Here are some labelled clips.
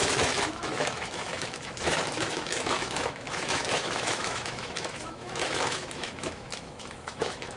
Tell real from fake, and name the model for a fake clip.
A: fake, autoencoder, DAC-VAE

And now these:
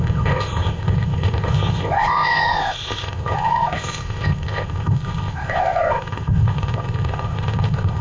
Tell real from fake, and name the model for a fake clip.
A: fake, codec, ZipCodec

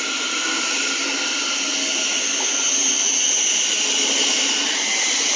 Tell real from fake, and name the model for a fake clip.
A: real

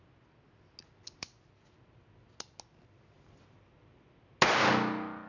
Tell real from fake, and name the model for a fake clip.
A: real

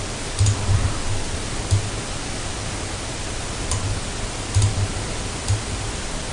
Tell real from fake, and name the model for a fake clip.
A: real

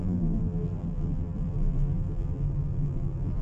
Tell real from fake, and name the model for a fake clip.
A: fake, vocoder, BigVGAN v2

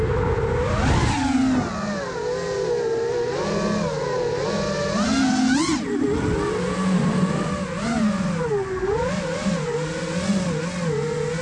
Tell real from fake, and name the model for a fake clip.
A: real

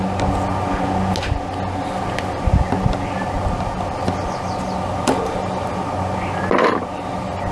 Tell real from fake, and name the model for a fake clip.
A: real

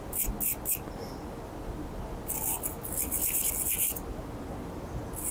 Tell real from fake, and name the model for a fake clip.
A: real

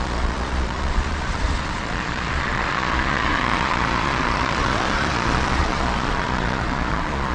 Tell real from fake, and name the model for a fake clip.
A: fake, vocoder, Vocos